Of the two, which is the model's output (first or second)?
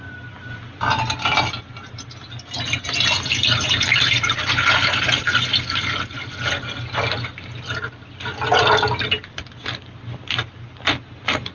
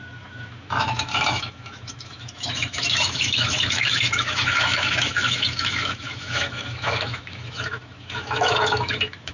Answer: second